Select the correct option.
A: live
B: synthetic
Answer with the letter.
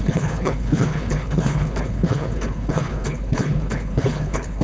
B